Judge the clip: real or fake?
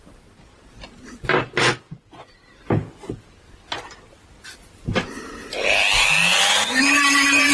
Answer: real